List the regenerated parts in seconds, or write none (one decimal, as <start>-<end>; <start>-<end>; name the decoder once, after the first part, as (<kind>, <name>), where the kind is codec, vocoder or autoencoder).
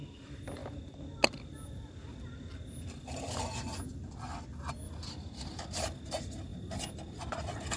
none